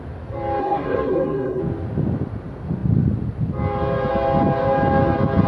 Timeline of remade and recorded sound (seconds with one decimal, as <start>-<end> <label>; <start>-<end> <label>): 0.0-0.6 recorded; 0.6-1.6 remade; 1.6-5.5 recorded